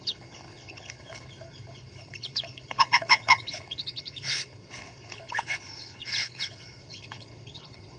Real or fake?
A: fake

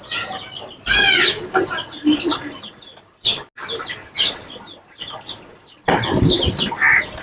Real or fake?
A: real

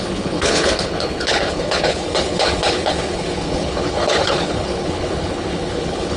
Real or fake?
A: fake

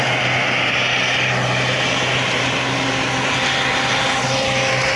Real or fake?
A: real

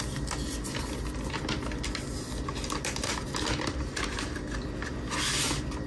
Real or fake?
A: real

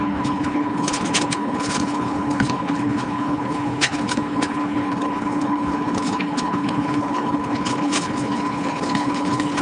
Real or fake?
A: fake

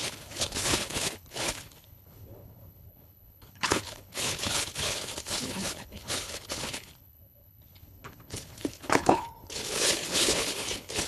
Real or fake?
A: fake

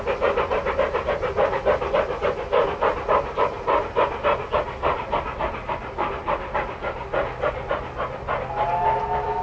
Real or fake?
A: real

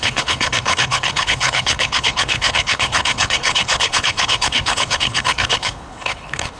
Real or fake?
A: fake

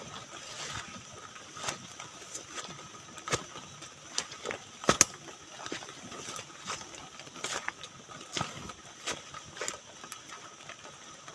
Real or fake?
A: real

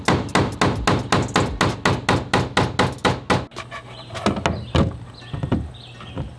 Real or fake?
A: real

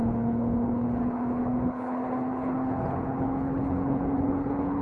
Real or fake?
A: fake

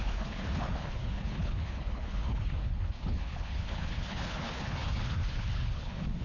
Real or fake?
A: fake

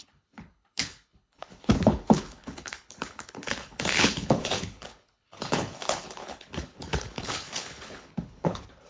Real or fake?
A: fake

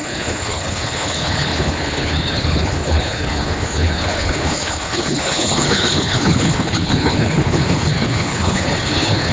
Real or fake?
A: fake